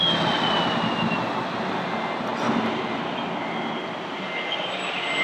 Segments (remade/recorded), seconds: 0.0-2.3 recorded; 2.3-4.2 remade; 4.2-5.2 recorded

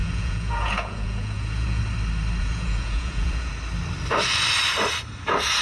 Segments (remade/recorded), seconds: 0.0-1.8 remade; 1.8-2.4 recorded; 2.4-3.5 remade; 3.5-5.6 recorded